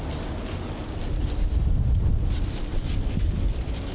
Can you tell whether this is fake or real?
real